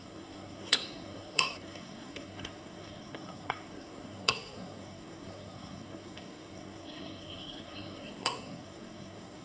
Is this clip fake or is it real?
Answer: fake